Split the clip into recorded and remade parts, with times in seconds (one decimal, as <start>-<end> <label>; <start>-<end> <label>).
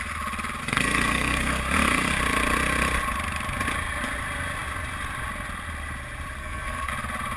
0.0-0.6 recorded; 0.6-1.6 remade; 1.6-6.4 recorded; 6.4-6.9 remade; 6.9-7.4 recorded